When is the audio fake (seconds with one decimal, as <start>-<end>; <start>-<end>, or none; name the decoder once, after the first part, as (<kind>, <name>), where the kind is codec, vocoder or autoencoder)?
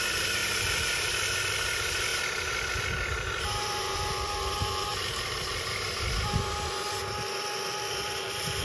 0.0-0.4 (vocoder, BigVGAN v2); 1.0-8.6